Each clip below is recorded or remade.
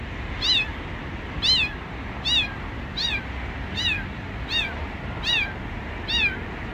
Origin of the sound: recorded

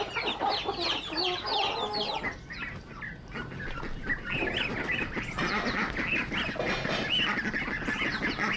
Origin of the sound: recorded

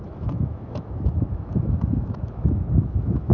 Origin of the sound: remade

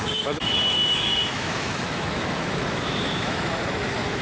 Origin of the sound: remade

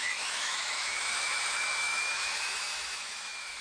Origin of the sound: remade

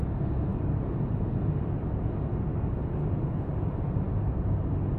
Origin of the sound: recorded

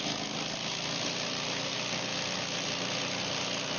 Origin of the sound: recorded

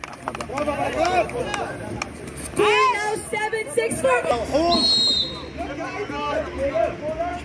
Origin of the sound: recorded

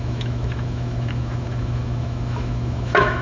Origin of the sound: remade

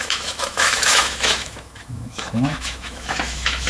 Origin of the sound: remade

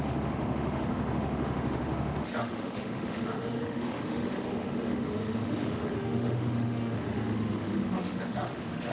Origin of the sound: remade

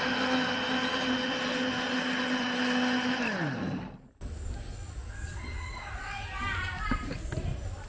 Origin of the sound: recorded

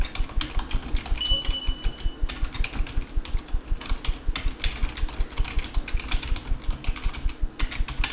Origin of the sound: recorded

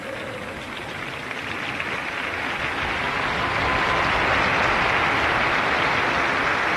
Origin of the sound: recorded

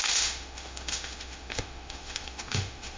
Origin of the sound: remade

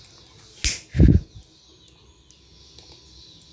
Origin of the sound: recorded